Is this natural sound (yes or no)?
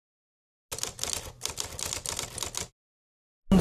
yes